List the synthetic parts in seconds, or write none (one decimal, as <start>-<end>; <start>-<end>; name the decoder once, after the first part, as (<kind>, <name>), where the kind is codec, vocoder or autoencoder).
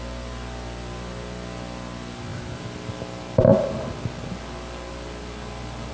none